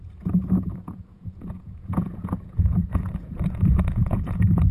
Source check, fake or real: fake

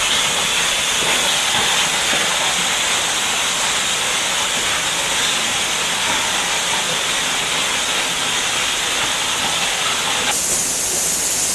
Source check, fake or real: real